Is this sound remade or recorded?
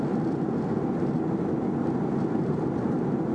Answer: recorded